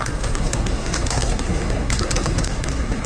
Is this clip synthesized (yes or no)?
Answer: yes